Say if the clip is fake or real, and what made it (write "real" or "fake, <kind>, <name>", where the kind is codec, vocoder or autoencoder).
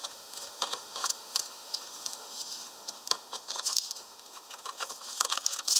fake, autoencoder, DAC-VAE